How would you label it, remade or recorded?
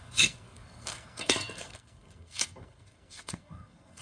remade